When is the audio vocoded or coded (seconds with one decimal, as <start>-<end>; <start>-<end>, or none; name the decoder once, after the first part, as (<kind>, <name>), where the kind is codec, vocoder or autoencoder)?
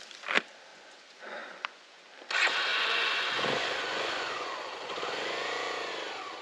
0.7-2.0 (vocoder, Vocos); 2.7-5.9